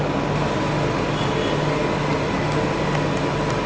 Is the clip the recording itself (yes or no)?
yes